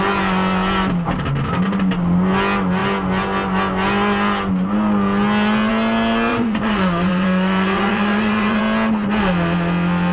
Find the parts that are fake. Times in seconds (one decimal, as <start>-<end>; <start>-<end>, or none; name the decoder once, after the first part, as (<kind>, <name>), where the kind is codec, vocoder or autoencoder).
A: 6.3-8.6 (vocoder, Vocos)